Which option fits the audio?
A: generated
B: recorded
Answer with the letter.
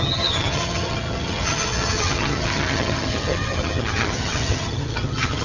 A